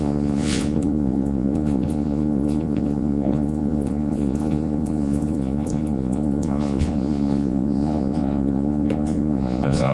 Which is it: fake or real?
fake